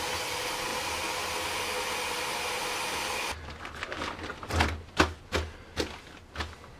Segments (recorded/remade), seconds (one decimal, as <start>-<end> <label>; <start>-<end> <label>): 0.0-6.8 recorded